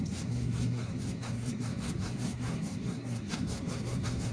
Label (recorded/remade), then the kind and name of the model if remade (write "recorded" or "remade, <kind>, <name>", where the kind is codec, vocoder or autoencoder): remade, codec, SNAC